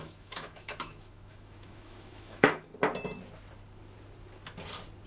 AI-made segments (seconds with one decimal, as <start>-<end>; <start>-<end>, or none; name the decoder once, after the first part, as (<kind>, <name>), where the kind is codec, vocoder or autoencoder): 0.0-2.7 (autoencoder, DAC-VAE)